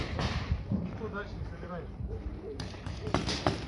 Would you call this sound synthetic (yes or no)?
yes